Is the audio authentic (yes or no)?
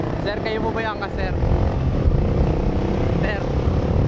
yes